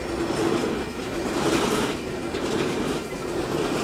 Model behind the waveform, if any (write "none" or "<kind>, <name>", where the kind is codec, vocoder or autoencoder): none